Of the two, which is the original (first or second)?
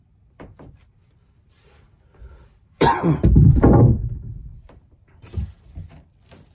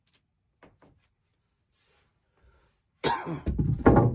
second